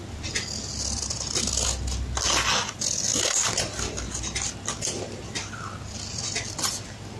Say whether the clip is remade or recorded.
recorded